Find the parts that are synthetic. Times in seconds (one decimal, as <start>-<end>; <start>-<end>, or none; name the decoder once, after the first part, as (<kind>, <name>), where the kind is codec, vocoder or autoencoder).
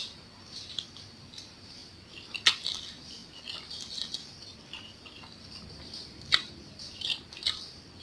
0.0-1.8 (vocoder, BigVGAN v2); 2.5-8.0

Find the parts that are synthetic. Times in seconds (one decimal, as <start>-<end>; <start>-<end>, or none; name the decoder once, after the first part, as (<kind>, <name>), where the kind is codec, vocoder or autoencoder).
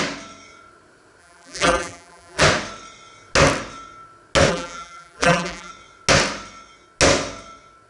1.2-2.4 (vocoder, BigVGAN v2); 4.5-5.7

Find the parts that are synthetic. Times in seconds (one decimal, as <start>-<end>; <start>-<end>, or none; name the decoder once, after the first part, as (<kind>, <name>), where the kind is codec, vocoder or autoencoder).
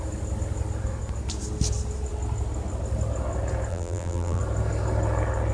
3.7-4.4 (vocoder, BigVGAN v2)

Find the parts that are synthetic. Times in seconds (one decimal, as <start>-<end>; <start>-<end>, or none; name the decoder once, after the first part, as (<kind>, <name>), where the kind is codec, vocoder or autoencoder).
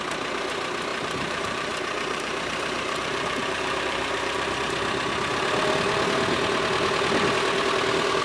0.9-4.6 (vocoder, BigVGAN v2)